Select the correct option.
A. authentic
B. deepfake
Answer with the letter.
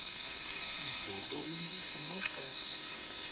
B